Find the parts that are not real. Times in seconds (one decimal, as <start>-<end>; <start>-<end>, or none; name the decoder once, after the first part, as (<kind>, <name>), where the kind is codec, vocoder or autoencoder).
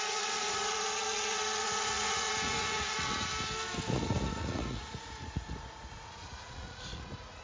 0.0-3.3 (vocoder, Vocos); 3.9-7.4